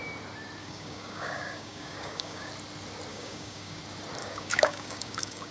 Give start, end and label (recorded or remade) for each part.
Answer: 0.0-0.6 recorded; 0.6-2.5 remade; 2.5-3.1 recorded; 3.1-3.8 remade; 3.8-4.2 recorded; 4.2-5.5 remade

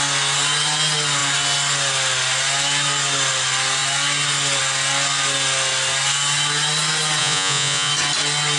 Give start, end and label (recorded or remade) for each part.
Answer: 0.0-7.2 recorded; 7.2-7.9 remade; 7.9-8.6 recorded

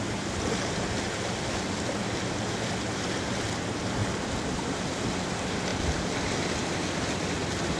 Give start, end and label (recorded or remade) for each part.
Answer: 0.0-7.8 recorded

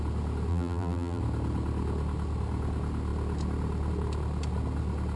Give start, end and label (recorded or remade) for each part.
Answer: 0.0-0.5 recorded; 0.5-1.2 remade; 1.2-5.2 recorded